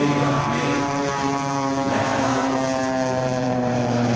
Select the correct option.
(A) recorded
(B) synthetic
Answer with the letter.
B